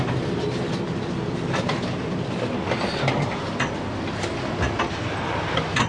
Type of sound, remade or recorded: recorded